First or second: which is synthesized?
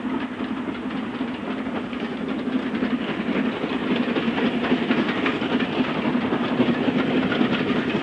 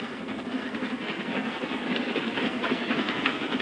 second